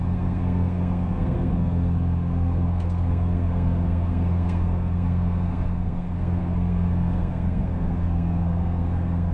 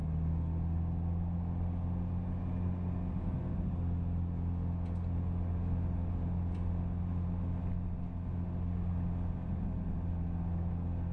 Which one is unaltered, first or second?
second